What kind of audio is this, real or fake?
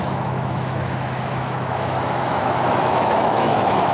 fake